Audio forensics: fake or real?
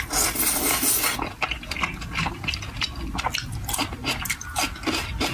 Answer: real